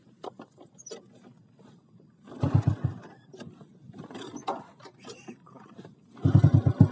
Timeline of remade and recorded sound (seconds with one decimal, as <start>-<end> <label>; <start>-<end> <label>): 0.0-6.9 recorded